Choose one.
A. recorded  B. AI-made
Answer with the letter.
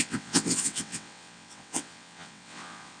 B